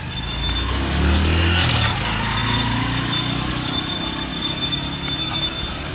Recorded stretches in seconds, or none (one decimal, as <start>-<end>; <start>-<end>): none